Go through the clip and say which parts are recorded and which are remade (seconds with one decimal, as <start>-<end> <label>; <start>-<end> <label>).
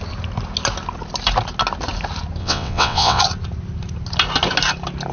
0.0-2.4 recorded; 2.4-3.2 remade; 3.2-5.1 recorded